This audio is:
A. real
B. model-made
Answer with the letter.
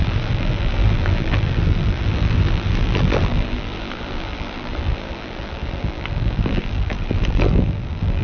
B